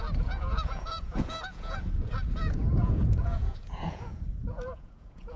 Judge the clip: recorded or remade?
remade